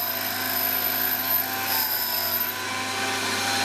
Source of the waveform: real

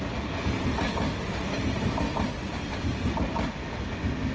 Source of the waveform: real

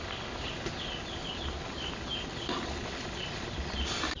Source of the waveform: real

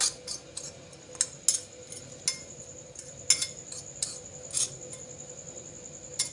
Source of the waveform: real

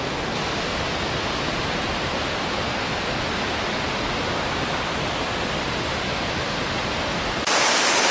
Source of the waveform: real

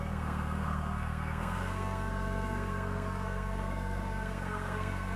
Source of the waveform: fake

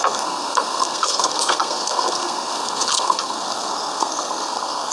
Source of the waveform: fake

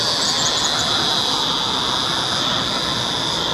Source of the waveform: real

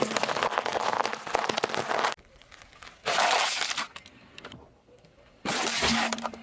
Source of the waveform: real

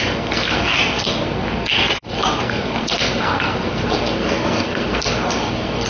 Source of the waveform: fake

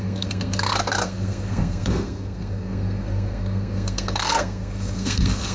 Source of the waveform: fake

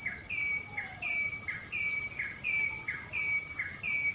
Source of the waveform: real